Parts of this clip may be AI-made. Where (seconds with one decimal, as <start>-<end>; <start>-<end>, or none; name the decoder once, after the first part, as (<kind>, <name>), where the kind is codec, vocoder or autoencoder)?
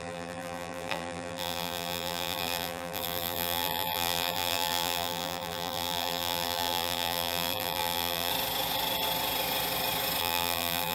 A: 0.0-8.3 (vocoder, BigVGAN v2); 10.2-10.9